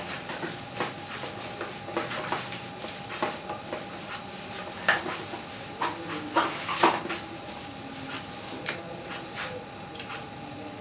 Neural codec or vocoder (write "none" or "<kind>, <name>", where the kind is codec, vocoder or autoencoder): none